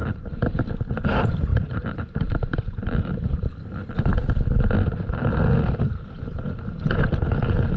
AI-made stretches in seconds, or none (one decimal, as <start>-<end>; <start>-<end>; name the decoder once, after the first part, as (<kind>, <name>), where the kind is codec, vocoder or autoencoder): 0.0-0.7 (vocoder, BigVGAN v2); 1.5-3.1